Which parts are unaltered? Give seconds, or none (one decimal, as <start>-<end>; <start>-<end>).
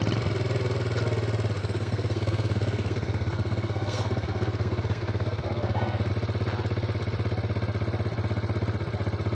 0.0-1.6; 6.1-9.3